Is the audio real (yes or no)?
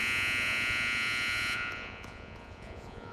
no